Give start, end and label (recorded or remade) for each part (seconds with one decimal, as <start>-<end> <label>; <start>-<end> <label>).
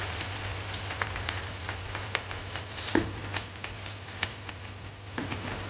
0.0-0.5 remade; 0.5-1.4 recorded; 1.4-3.2 remade; 3.2-5.3 recorded; 5.3-5.7 remade